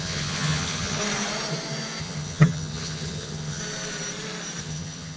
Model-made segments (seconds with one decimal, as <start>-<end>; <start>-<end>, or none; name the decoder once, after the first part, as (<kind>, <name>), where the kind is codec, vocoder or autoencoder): 0.0-1.0 (vocoder, HiFi-GAN); 2.0-3.6; 4.6-5.2

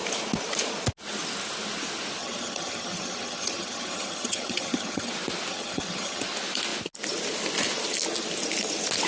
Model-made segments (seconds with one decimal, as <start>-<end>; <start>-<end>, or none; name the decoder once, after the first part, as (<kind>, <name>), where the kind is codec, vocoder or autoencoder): 2.2-5.1 (vocoder, HiFi-GAN); 5.5-6.2